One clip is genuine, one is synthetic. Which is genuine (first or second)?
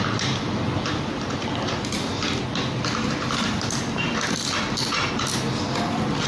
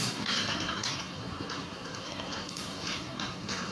first